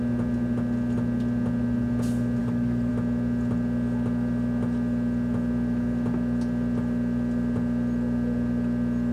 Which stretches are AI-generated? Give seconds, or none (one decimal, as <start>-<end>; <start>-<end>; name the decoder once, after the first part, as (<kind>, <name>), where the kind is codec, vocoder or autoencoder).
2.4-2.9 (codec, DAC)